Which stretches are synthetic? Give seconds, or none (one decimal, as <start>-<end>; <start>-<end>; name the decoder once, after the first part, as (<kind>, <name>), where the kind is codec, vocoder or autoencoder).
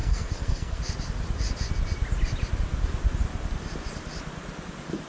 0.0-0.8 (codec, SNAC)